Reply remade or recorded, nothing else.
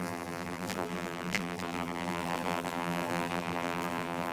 remade